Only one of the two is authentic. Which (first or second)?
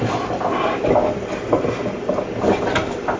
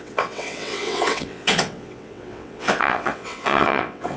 first